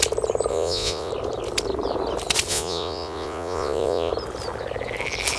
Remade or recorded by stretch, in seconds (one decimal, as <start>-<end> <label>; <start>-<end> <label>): 0.0-0.5 recorded; 0.5-1.1 remade; 1.1-2.5 recorded; 2.5-4.1 remade; 4.1-5.4 recorded